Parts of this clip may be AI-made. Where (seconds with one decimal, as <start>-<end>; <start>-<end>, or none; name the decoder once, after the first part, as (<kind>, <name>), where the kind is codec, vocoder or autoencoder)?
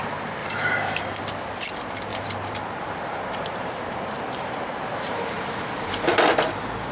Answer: 0.4-1.2 (vocoder, BigVGAN v2); 2.1-6.2